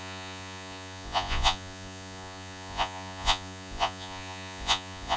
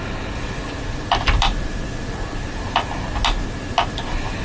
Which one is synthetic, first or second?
first